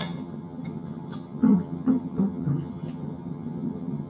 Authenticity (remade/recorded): remade